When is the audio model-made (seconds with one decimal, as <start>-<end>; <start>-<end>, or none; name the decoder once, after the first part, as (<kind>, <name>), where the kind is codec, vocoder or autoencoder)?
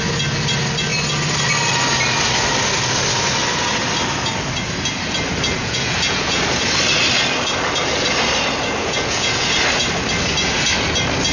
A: 5.6-6.4 (vocoder, Vocos); 8.8-9.6